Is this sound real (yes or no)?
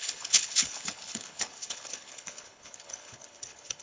no